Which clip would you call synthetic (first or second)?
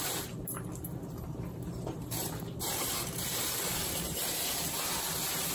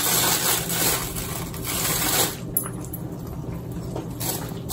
first